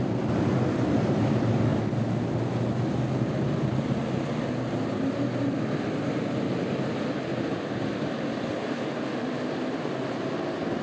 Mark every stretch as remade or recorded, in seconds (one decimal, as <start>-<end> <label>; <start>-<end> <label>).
0.0-0.9 recorded; 0.9-1.7 remade; 1.7-6.7 recorded; 6.7-10.8 remade

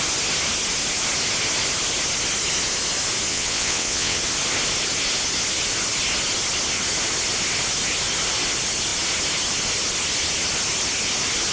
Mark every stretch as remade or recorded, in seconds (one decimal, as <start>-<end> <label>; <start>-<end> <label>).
0.0-3.3 recorded; 3.3-4.2 remade; 4.2-11.5 recorded

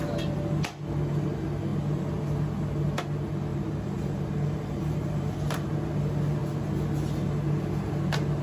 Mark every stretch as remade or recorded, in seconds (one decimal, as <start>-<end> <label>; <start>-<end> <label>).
0.0-3.5 recorded; 3.5-5.2 remade; 5.2-8.4 recorded

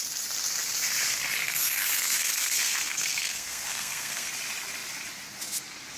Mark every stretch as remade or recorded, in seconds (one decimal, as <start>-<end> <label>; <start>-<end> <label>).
0.0-1.4 recorded; 1.4-4.3 remade; 4.3-6.0 recorded